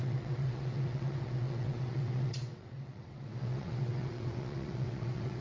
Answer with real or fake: fake